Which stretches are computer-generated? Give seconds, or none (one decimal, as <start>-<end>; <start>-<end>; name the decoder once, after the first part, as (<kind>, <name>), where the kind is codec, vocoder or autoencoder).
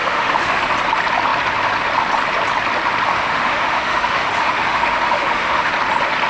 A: 0.0-0.6 (autoencoder, DAC-VAE); 3.1-5.7